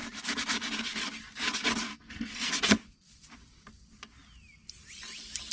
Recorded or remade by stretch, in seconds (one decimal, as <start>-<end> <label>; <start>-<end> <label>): 0.0-1.9 recorded; 1.9-2.5 remade; 2.5-5.5 recorded